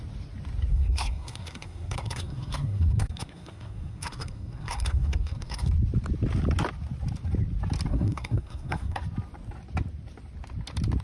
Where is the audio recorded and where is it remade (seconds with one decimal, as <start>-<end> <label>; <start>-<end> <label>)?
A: 0.0-0.7 recorded; 0.7-5.7 remade; 5.7-7.9 recorded; 7.9-9.0 remade; 9.0-11.0 recorded